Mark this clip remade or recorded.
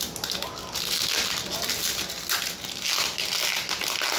recorded